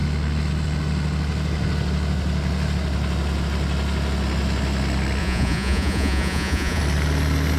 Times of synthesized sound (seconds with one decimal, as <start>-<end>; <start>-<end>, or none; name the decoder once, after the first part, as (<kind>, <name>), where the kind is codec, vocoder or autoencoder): 5.2-6.8 (vocoder, Vocos)

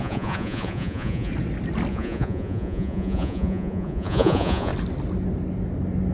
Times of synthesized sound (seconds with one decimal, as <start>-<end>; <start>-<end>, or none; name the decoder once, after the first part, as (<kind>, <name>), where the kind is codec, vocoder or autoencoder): 0.0-1.3 (vocoder, Vocos); 1.9-4.7

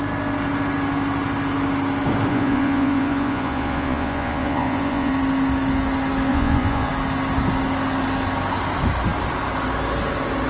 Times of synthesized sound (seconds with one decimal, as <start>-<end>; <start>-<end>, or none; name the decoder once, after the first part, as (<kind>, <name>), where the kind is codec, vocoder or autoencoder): 2.3-5.1 (vocoder, Vocos); 6.3-6.9

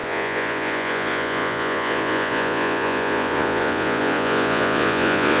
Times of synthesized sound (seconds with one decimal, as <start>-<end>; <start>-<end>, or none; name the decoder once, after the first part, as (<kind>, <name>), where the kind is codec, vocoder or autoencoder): 0.0-5.4 (vocoder, Vocos)

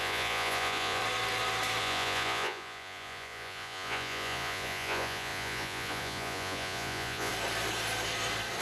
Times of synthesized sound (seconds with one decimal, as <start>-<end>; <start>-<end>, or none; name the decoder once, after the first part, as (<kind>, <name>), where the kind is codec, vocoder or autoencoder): 0.0-1.0 (vocoder, Vocos); 1.8-7.3

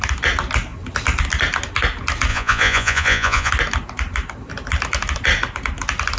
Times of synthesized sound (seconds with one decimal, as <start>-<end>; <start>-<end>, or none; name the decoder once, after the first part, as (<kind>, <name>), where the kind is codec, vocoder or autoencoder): 2.3-3.5 (vocoder, Vocos)

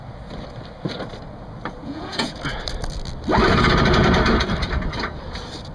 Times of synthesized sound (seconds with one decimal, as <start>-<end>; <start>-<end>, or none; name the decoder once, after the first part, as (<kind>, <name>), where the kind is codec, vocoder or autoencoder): 1.8-2.4 (vocoder, Vocos)